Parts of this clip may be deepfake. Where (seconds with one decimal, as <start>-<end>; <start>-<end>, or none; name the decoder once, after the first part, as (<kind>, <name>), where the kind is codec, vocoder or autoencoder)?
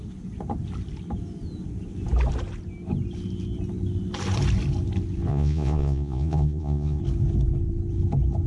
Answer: 5.3-7.0 (vocoder, Vocos)